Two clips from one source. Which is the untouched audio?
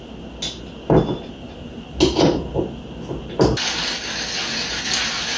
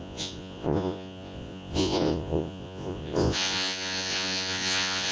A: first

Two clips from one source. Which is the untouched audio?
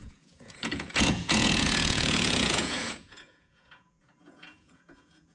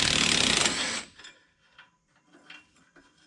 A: second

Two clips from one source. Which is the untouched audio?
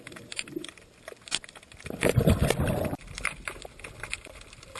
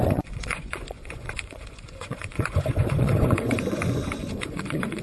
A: first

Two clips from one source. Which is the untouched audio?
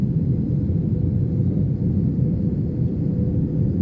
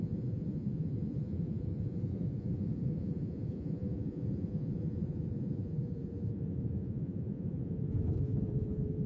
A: first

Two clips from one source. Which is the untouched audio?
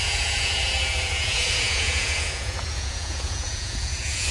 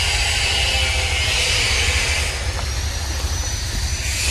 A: second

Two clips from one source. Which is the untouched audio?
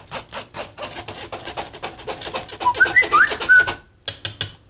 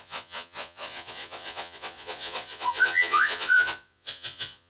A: first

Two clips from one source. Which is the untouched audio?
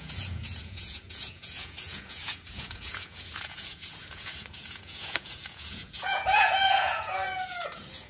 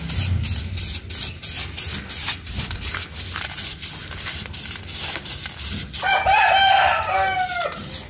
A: second